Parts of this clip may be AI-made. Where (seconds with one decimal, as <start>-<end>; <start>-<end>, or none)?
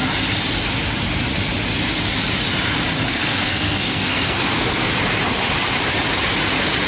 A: 3.1-4.9